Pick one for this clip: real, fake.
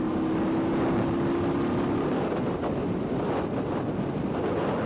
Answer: real